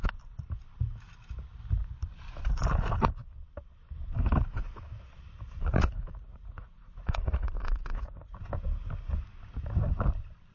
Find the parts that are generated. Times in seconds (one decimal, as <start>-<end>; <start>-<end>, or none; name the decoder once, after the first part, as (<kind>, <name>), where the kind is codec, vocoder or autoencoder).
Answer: 5.9-8.4 (vocoder, Vocos)